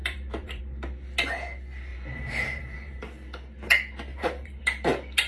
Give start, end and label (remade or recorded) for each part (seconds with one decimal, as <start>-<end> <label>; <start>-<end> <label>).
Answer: 0.0-0.6 remade; 0.6-1.9 recorded; 1.9-3.0 remade; 3.0-4.1 recorded; 4.1-4.6 remade; 4.6-5.3 recorded